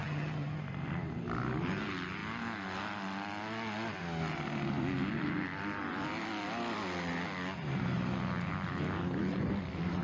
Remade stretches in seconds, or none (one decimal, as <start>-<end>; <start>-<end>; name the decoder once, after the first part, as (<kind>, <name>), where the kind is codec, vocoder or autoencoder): 0.0-0.6 (vocoder, HiFi-GAN)